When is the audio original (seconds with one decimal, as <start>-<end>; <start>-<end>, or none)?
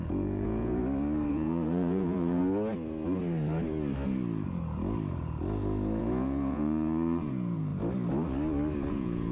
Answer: 0.8-1.3; 2.4-6.0; 7.7-8.9